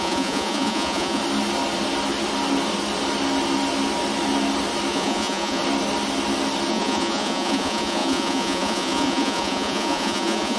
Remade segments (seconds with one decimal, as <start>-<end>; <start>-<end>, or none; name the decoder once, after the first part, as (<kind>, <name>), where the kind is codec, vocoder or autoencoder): 0.0-1.2 (vocoder, Vocos); 4.9-5.6; 6.7-10.6